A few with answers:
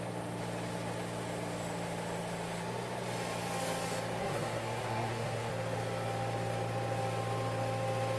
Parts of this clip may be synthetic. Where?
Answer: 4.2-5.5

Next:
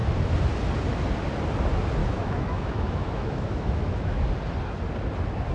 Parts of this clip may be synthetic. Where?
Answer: 2.0-4.2